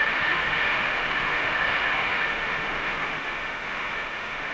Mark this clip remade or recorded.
remade